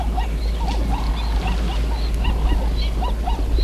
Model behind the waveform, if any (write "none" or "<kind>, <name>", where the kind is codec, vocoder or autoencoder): none